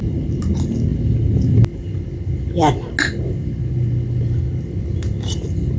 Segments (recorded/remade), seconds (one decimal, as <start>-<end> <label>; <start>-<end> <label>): 0.0-5.8 recorded